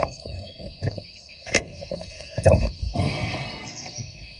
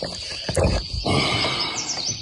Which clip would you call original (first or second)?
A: second